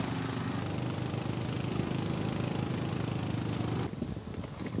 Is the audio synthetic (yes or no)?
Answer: no